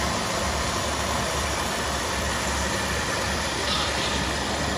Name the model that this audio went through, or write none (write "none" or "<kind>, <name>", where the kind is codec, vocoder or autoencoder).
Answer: vocoder, BigVGAN v2